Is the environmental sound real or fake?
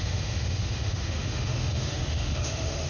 fake